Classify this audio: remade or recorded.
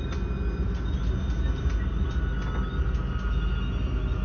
recorded